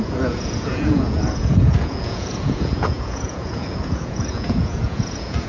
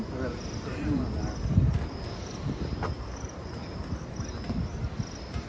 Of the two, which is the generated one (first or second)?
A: first